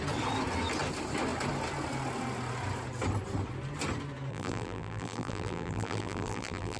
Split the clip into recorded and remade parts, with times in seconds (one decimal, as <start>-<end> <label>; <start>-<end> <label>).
0.0-4.3 recorded; 4.3-6.8 remade